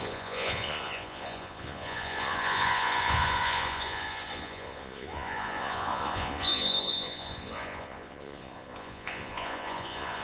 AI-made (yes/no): yes